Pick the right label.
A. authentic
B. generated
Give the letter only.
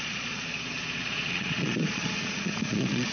B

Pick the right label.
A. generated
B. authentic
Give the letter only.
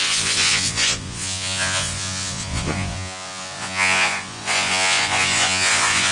A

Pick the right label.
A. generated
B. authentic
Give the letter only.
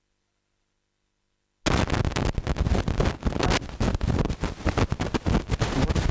B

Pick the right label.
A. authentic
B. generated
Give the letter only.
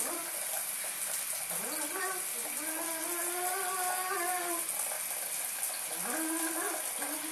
A